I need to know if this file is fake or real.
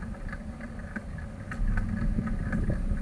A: real